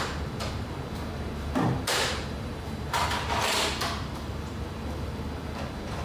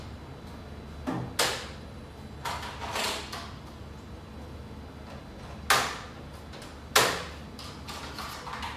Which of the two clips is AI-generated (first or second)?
first